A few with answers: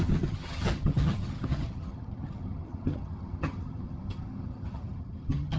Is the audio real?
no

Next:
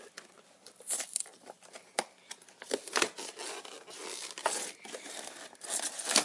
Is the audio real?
yes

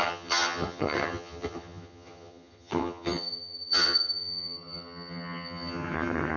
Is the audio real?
no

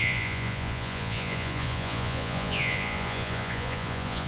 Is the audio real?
no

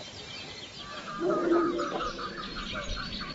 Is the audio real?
yes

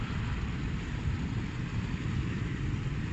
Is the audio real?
no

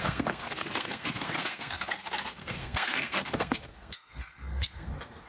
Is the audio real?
no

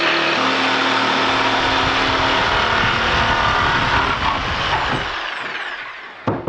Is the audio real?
yes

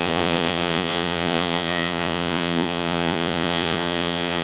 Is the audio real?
no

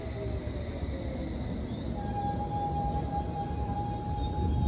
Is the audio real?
yes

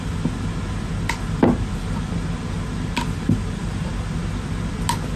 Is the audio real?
yes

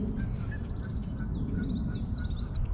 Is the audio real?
yes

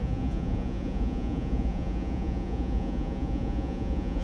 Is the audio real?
no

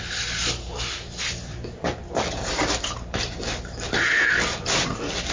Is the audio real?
yes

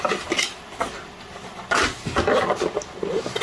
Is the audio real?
yes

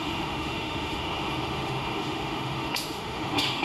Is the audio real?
no